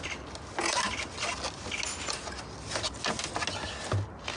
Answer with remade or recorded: recorded